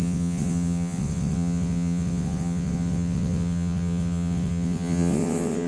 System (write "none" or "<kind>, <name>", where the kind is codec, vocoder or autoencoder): vocoder, WaveNeXt